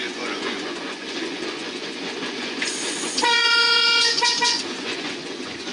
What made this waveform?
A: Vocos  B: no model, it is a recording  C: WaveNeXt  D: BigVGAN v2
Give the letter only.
A